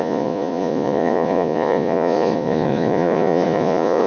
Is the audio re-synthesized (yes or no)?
yes